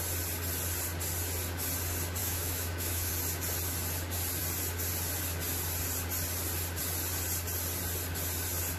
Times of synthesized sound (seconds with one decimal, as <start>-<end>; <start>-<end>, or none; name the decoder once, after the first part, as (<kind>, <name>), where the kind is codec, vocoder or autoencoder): 2.2-3.1 (autoencoder, DAC-VAE)